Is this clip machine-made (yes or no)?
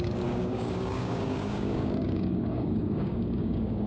yes